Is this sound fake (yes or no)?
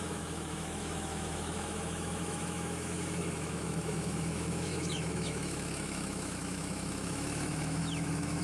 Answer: yes